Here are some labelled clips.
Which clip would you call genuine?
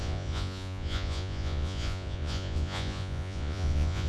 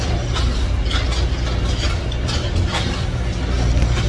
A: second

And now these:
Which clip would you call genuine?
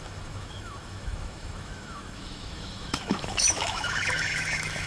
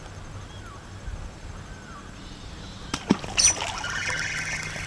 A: second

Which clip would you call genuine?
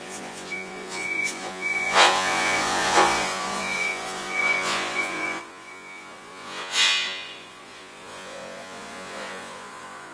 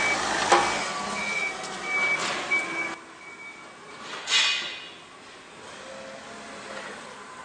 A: second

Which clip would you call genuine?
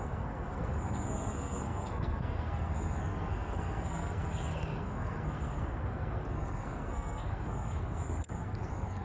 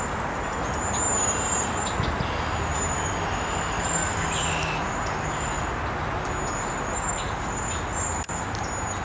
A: second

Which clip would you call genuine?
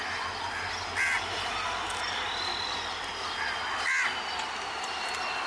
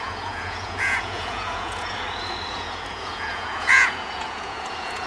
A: first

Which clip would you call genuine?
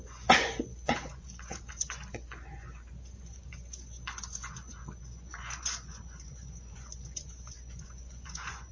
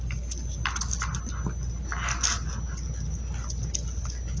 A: second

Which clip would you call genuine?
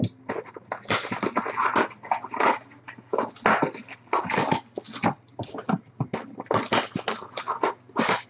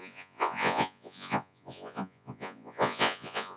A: first